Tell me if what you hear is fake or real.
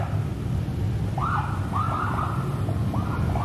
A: real